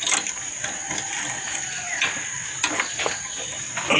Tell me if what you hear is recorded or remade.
recorded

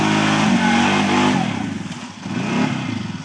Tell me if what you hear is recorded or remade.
recorded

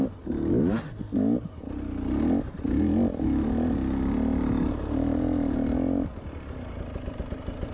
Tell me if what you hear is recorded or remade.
recorded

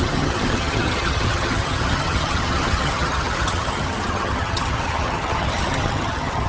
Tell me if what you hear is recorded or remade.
remade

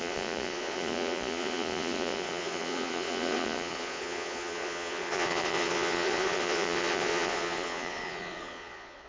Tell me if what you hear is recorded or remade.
remade